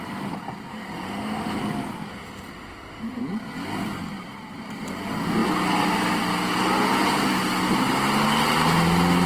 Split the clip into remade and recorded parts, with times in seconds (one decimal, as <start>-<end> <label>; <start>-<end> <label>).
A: 0.0-0.7 recorded; 0.7-1.6 remade; 1.6-2.1 recorded; 2.1-3.2 remade; 3.2-9.3 recorded